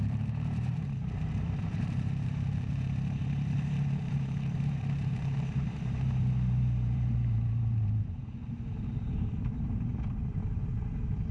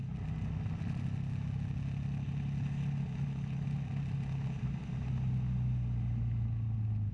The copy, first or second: first